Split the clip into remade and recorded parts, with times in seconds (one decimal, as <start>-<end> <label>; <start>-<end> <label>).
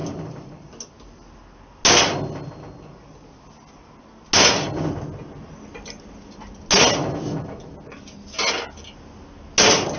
0.0-0.7 remade; 0.7-10.0 recorded